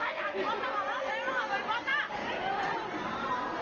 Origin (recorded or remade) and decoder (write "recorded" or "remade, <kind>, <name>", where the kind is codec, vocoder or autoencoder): recorded